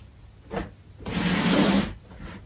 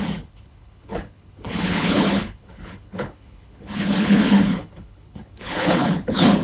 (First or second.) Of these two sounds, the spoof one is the second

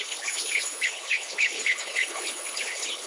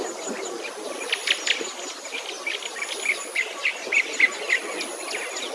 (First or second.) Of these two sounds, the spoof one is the first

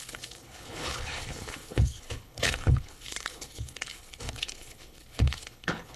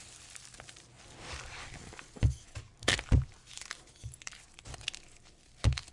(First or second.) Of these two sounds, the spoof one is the first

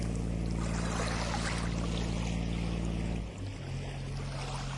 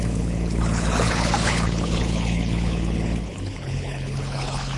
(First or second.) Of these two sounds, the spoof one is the second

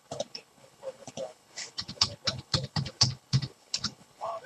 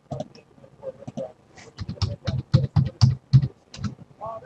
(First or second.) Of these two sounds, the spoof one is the first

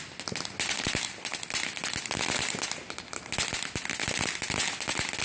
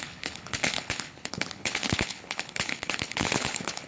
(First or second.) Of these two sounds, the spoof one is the second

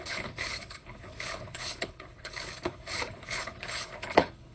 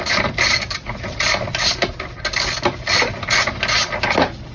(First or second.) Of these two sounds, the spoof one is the first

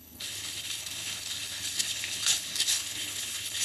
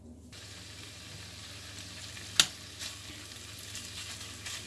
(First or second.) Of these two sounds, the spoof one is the first